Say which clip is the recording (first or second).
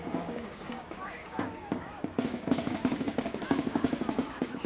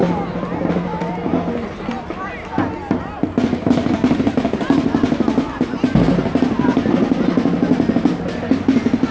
second